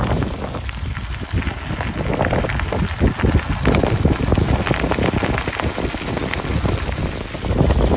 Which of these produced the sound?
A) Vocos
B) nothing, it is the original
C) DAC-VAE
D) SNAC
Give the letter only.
B